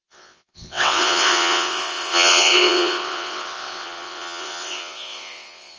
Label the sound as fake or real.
fake